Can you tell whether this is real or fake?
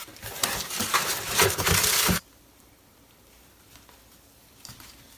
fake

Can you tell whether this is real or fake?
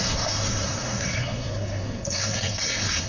fake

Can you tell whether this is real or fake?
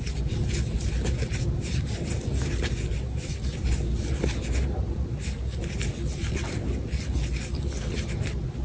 real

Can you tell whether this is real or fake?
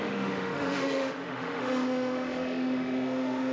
fake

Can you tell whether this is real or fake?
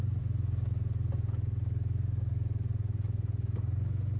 real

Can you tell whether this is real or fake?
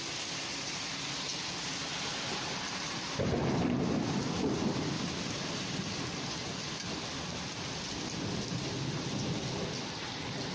real